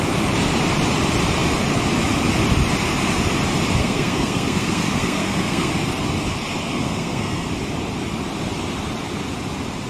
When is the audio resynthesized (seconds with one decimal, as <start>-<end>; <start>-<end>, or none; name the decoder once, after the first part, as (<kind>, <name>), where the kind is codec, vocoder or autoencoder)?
3.8-5.7 (codec, SNAC); 6.6-7.5